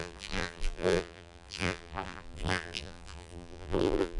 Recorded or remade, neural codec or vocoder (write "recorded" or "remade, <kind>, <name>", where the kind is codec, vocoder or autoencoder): remade, vocoder, BigVGAN v2